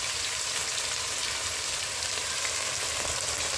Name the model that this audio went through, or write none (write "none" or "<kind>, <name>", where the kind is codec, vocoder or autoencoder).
vocoder, BigVGAN v2